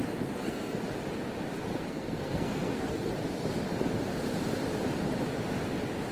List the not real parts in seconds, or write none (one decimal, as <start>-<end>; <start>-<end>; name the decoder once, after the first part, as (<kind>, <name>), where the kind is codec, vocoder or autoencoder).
0.0-0.8 (codec, SNAC); 1.7-3.1